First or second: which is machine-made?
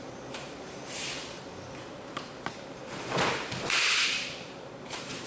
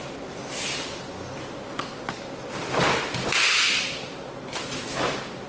first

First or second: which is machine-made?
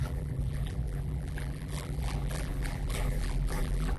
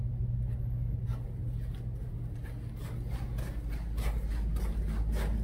first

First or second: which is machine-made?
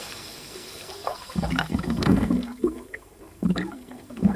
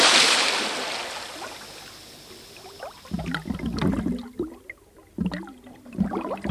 first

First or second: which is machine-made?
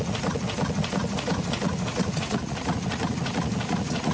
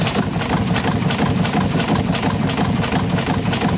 first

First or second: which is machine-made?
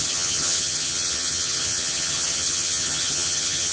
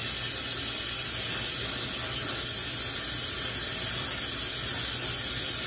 first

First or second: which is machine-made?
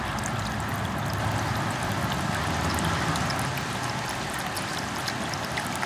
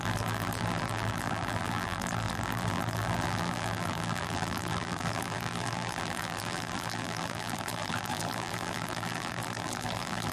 second